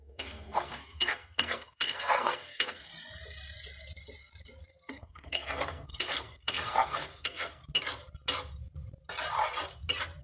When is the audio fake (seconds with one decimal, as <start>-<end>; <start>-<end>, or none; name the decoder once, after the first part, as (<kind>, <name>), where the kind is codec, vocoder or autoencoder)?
0.0-2.9 (codec, SNAC); 4.9-7.6